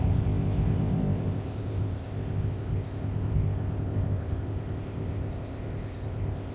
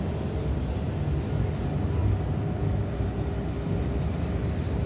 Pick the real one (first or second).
second